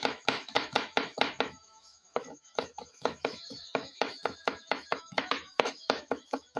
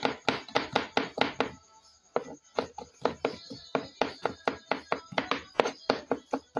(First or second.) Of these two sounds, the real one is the second